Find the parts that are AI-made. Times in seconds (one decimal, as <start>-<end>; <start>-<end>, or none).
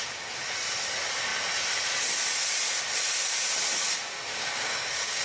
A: 4.3-5.2